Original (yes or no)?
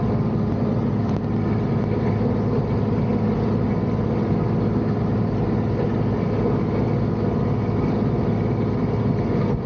yes